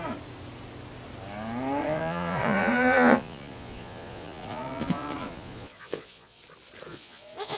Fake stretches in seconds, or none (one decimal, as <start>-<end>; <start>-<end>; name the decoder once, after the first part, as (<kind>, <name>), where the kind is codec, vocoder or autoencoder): 1.8-6.4 (vocoder, Vocos); 6.9-7.6